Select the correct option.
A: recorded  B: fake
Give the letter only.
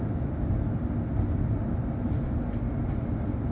A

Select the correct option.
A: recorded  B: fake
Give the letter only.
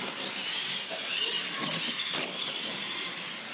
A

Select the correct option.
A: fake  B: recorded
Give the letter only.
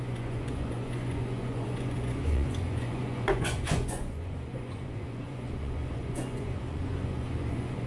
A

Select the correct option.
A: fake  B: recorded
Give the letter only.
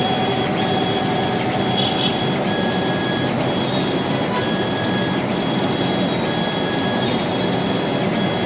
B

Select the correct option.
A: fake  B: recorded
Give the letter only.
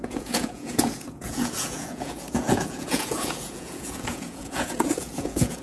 A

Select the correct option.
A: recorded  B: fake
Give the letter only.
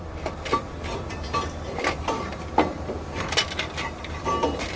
A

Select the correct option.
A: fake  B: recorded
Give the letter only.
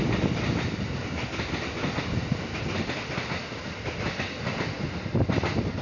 B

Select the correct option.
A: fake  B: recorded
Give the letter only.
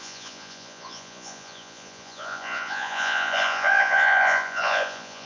A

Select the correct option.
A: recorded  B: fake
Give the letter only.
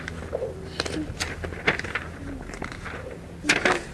A